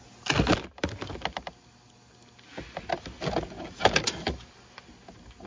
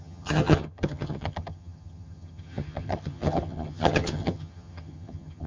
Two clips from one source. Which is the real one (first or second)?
first